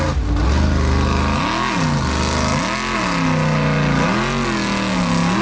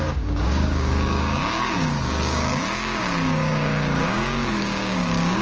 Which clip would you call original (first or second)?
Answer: first